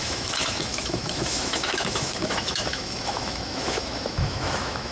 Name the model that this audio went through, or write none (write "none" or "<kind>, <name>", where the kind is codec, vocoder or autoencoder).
autoencoder, DAC-VAE